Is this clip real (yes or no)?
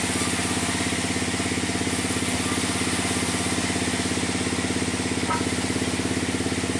yes